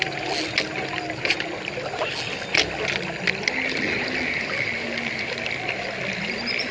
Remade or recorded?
recorded